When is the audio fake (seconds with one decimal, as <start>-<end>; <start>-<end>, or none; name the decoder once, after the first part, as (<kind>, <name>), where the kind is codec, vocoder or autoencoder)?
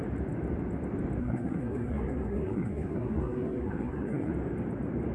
1.2-4.3 (codec, SNAC)